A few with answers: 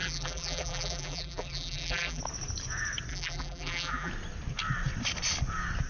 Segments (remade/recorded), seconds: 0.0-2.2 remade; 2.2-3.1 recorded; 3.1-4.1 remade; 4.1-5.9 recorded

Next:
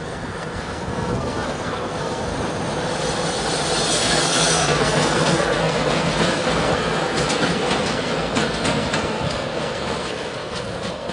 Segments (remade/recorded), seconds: 0.0-2.3 remade; 2.3-3.9 recorded; 3.9-11.1 remade